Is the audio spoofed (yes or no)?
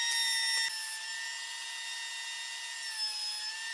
no